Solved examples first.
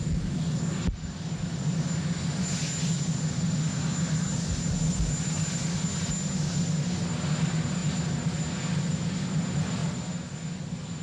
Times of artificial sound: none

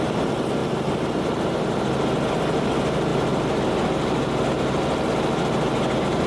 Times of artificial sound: none

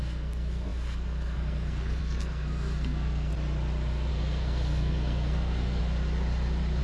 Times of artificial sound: 0.0-3.3 (codec, SNAC); 4.1-5.8

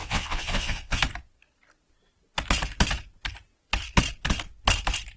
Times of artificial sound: 0.0-1.0 (vocoder, WaveNeXt)

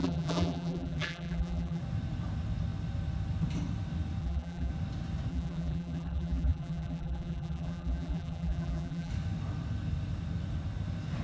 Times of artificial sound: 0.0-1.8 (vocoder, BigVGAN v2); 4.2-4.7; 5.3-9.1